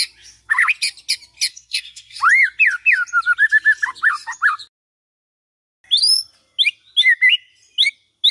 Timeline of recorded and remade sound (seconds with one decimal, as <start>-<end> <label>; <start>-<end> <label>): 0.0-1.5 recorded; 1.5-2.2 remade; 2.2-8.3 recorded